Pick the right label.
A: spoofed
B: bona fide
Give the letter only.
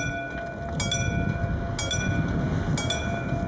B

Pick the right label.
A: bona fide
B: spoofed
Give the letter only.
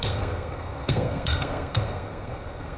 B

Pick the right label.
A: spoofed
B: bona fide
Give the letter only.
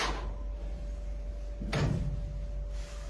B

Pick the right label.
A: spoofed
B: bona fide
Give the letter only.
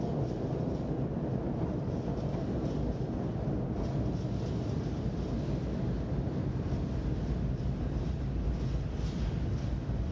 B